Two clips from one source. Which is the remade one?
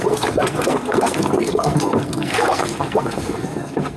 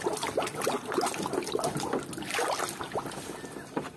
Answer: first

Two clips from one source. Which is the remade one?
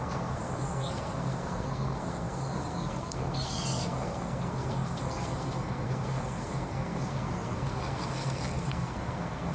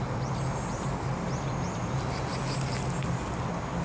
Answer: first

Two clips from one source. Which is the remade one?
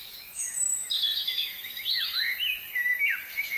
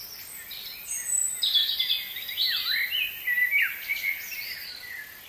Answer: first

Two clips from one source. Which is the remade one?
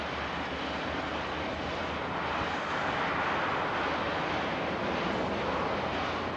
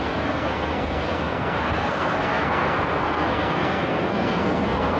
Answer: second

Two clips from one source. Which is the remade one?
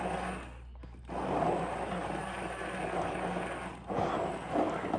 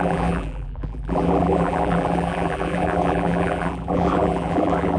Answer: second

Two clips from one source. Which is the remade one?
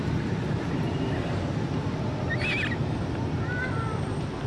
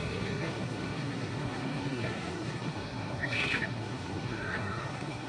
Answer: second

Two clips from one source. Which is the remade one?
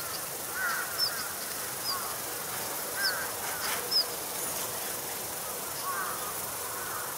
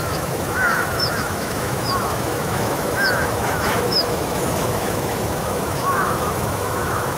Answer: second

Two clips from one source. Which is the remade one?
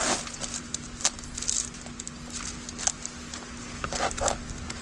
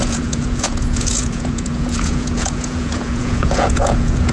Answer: second